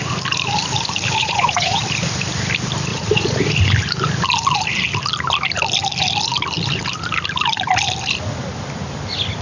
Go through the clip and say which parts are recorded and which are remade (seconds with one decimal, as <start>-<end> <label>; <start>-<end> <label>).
0.0-1.2 recorded; 1.2-1.8 remade; 1.8-2.9 recorded; 2.9-3.4 remade; 3.4-9.4 recorded